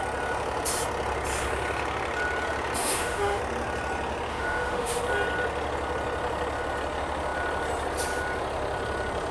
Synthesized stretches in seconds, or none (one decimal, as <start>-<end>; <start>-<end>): 2.8-3.4; 4.3-5.0